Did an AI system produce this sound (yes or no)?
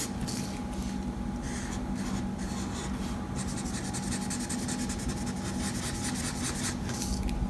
no